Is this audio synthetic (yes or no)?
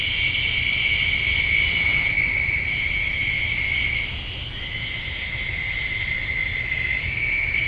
no